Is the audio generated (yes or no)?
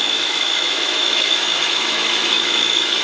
yes